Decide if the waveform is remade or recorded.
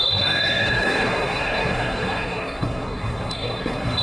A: remade